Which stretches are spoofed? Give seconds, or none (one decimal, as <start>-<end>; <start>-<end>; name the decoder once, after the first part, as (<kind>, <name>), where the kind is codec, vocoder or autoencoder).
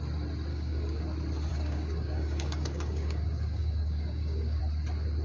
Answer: 0.5-1.0 (codec, DAC); 1.5-4.6